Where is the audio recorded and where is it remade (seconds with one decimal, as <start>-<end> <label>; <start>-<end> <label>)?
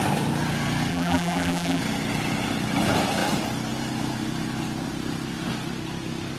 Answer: 0.0-0.9 recorded; 0.9-1.8 remade; 1.8-6.4 recorded